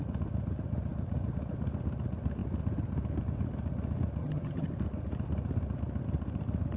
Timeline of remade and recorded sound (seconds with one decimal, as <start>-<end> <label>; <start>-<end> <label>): 0.0-4.2 recorded; 4.2-4.7 remade; 4.7-6.8 recorded